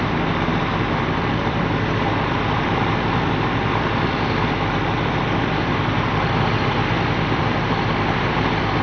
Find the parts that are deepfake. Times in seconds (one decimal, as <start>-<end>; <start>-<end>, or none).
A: none

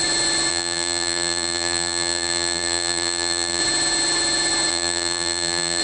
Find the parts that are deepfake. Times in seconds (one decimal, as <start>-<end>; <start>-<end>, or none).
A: 0.5-3.6; 4.7-5.8

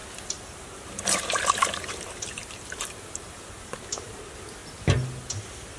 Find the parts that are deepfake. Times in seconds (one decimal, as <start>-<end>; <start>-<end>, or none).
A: 0.0-3.5